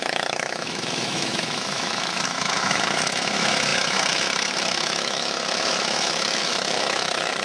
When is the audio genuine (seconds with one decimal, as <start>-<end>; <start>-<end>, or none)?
none